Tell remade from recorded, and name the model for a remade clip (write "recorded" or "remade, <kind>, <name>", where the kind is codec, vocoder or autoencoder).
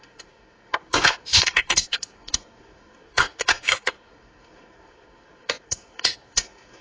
remade, codec, SNAC